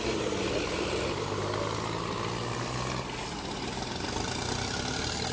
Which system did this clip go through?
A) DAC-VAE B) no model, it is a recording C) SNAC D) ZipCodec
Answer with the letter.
B